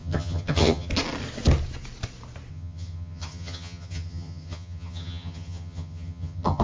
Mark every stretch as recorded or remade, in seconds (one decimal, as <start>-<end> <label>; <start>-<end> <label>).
0.0-0.9 remade; 0.9-2.5 recorded; 2.5-6.6 remade